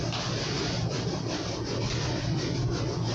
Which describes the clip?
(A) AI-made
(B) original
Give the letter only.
B